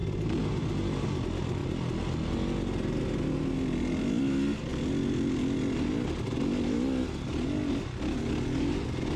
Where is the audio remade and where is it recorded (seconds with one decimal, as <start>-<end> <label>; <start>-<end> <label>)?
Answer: 0.0-1.2 remade; 1.2-9.2 recorded